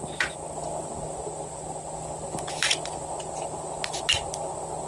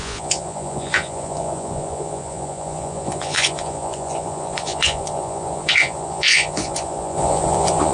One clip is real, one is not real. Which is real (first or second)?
first